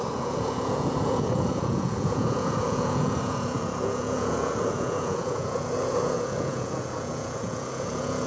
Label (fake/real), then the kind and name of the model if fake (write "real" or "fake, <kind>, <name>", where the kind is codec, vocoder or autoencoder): fake, vocoder, Vocos